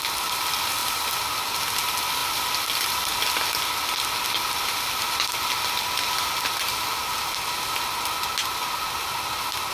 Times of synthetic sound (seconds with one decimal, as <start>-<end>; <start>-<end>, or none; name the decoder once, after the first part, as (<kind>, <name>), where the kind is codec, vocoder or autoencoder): 2.2-3.4 (vocoder, BigVGAN v2)